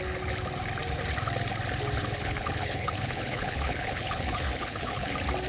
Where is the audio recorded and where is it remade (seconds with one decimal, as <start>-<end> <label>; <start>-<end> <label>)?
0.0-2.0 recorded; 2.0-5.1 remade; 5.1-5.5 recorded